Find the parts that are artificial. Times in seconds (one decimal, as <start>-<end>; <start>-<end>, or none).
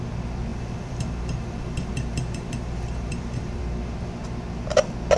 0.5-3.6